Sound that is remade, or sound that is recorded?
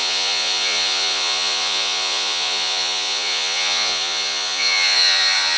remade